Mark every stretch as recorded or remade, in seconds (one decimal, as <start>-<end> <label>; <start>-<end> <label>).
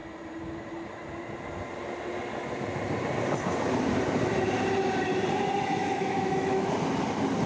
0.0-5.8 recorded; 5.8-6.7 remade; 6.7-7.5 recorded